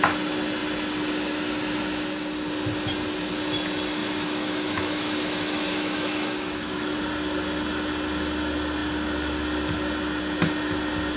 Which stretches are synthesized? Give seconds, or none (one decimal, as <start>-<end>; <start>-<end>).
4.0-7.0